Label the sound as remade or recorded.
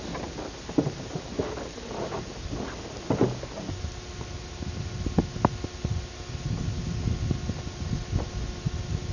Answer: recorded